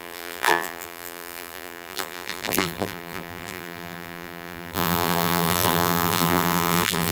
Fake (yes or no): yes